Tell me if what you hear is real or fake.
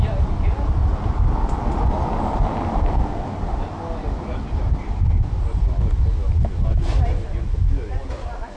real